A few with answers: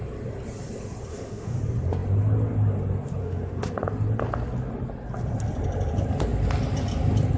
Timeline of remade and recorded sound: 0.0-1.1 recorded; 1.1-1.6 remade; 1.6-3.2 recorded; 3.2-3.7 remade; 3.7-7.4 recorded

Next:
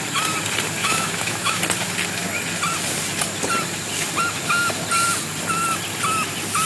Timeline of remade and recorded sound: 0.0-0.8 recorded; 0.8-1.6 remade; 1.6-6.7 recorded

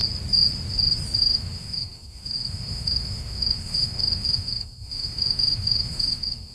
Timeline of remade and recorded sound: 0.0-1.2 recorded; 1.2-6.5 remade

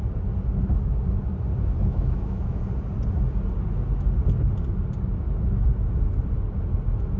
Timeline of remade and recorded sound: 0.0-1.9 recorded; 1.9-2.6 remade; 2.6-7.2 recorded

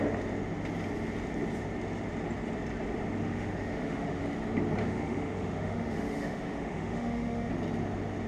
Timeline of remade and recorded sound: 0.0-3.2 recorded; 3.2-4.2 remade; 4.2-4.8 recorded; 4.8-7.5 remade; 7.5-8.3 recorded

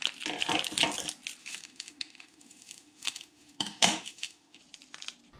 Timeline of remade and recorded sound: 0.0-1.4 recorded; 1.4-4.6 remade; 4.6-5.4 recorded